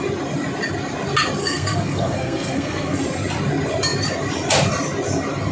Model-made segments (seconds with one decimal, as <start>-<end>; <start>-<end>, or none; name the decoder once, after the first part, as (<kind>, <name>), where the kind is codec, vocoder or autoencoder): 1.4-3.0 (codec, SNAC)